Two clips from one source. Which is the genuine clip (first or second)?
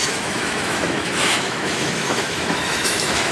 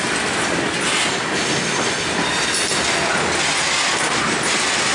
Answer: second